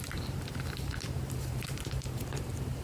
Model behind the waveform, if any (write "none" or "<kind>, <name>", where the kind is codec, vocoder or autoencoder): vocoder, BigVGAN v2